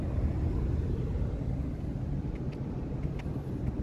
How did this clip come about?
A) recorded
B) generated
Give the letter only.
A